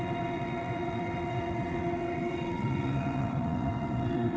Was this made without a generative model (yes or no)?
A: no